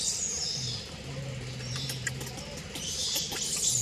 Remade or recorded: recorded